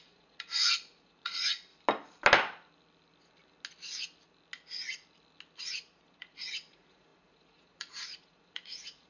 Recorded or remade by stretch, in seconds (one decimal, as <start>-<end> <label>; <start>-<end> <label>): 0.0-1.7 remade; 1.7-5.6 recorded; 5.6-9.1 remade

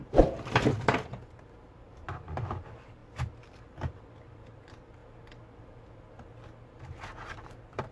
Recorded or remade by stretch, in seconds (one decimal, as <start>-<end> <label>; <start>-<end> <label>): 0.0-3.0 remade; 3.0-3.9 recorded; 3.9-5.0 remade; 5.0-7.3 recorded; 7.3-7.9 remade

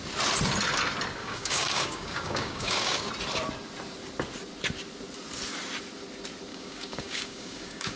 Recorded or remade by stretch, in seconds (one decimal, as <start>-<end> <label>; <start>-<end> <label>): 0.0-1.2 recorded; 1.2-3.1 remade; 3.1-6.5 recorded; 6.5-8.0 remade

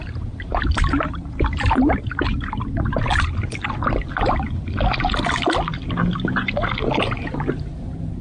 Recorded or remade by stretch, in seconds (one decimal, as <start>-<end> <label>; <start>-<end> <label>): 0.0-3.1 remade; 3.1-7.0 recorded; 7.0-8.2 remade

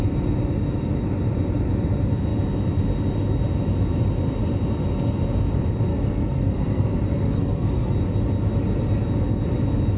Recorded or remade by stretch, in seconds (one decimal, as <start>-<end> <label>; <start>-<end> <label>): 0.0-5.9 recorded; 5.9-7.9 remade; 7.9-10.0 recorded

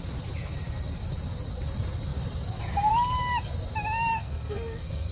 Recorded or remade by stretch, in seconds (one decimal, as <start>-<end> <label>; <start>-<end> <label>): 0.0-4.1 recorded; 4.1-5.1 remade

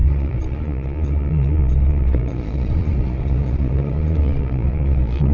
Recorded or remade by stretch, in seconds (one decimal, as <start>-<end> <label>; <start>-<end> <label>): 0.0-5.3 remade

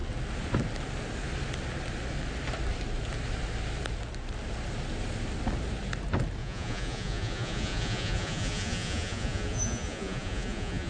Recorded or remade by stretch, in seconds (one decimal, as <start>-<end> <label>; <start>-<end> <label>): 0.0-6.4 recorded; 6.4-10.9 remade